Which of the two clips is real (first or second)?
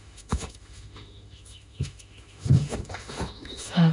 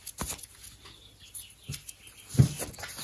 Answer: second